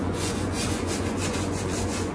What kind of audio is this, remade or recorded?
remade